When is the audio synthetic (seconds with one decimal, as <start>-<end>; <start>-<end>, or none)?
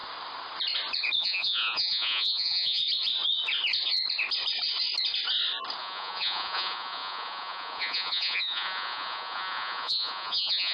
1.2-2.8; 5.8-10.7